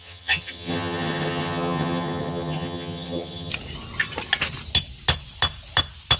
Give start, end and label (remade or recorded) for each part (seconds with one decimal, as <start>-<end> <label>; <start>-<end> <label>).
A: 0.0-3.5 remade; 3.5-6.2 recorded